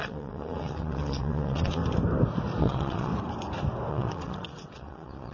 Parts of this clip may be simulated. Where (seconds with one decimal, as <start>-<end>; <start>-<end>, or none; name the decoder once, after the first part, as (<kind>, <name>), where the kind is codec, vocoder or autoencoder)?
0.0-1.8 (vocoder, WaveNeXt); 2.6-3.1; 3.9-5.3